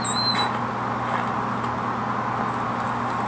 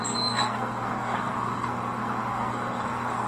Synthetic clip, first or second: second